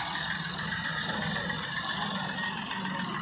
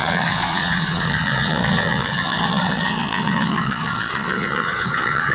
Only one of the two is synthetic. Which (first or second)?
second